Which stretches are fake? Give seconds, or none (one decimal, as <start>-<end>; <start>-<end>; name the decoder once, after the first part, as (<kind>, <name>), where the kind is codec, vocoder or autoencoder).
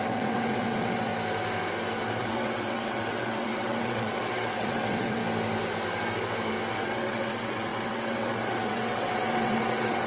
0.0-1.1 (vocoder, WaveNeXt); 2.2-5.2; 6.7-10.1